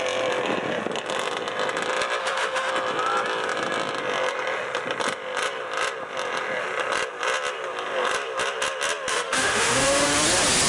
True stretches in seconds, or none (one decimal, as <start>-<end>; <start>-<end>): 0.0-2.2; 2.7-9.1; 10.1-10.7